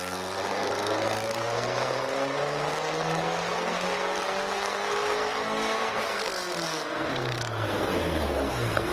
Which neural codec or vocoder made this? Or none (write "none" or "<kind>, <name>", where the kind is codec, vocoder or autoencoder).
codec, SNAC